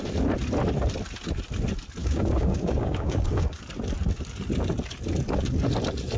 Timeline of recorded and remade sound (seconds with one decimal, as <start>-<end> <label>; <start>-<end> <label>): 0.0-2.0 recorded; 2.0-3.6 remade; 3.6-6.2 recorded